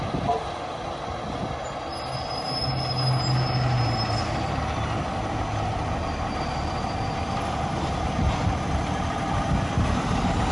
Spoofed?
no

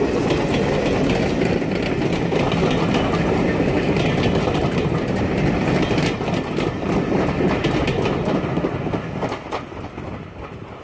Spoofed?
no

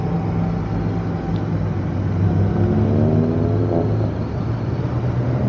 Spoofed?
no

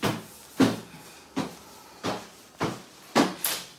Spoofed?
no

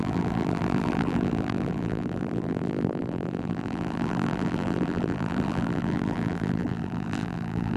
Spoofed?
yes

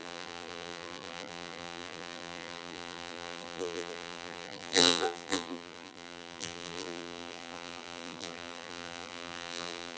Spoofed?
yes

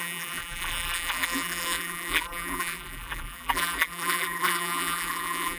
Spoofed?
yes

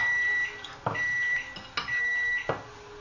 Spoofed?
no